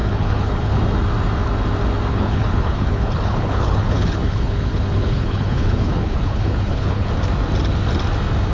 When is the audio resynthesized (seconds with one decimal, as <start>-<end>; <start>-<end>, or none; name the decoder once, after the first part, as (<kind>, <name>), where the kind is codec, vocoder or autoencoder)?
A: 0.0-0.8 (codec, HILCodec); 2.1-7.1